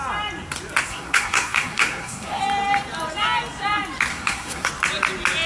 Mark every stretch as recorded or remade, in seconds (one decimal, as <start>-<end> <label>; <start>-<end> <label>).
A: 0.0-0.9 recorded; 0.9-2.4 remade; 2.4-4.1 recorded; 4.1-4.7 remade; 4.7-5.5 recorded